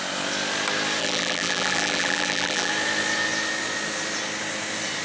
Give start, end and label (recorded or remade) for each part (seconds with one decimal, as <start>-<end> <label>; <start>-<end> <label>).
0.0-1.0 recorded; 1.0-2.7 remade; 2.7-5.0 recorded